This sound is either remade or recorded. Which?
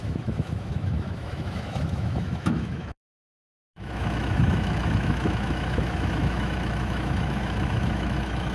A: remade